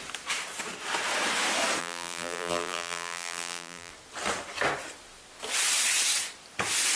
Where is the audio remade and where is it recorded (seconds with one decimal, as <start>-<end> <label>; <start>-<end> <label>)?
0.0-1.8 recorded; 1.8-3.9 remade; 3.9-7.0 recorded